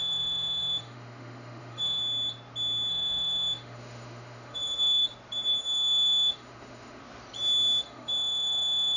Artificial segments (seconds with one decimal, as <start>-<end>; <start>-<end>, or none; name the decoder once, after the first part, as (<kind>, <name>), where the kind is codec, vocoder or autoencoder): 0.0-2.0 (autoencoder, DAC-VAE); 2.9-5.0; 5.6-7.0; 7.8-9.0